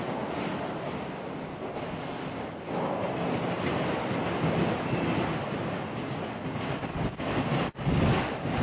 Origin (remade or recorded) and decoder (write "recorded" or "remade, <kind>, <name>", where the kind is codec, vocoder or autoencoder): recorded